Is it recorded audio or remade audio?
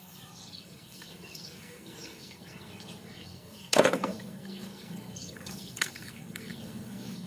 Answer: remade